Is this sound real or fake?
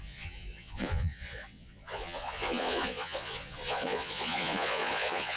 fake